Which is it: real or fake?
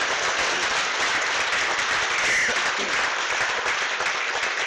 real